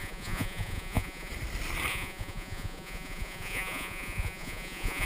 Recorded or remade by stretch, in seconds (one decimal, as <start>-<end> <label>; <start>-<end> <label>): 0.0-1.3 remade; 1.3-1.9 recorded; 1.9-5.1 remade